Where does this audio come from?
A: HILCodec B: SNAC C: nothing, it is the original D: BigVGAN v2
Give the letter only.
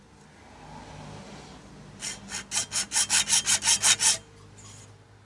C